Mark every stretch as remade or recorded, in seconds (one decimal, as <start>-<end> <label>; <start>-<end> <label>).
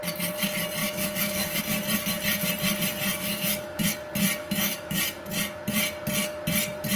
0.0-0.8 recorded; 0.8-1.6 remade; 1.6-3.1 recorded; 3.1-3.9 remade; 3.9-4.4 recorded; 4.4-5.0 remade; 5.0-7.0 recorded